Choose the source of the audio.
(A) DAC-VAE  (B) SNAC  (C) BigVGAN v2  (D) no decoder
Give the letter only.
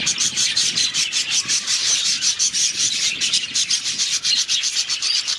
C